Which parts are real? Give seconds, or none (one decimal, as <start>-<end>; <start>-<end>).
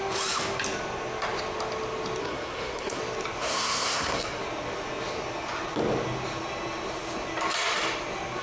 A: 0.0-2.2; 3.0-3.4; 4.4-8.4